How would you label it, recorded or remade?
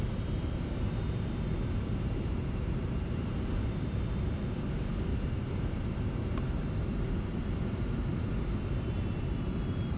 remade